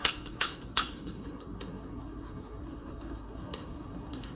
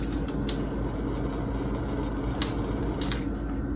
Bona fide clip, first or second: second